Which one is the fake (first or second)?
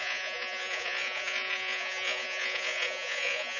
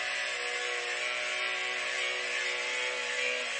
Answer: first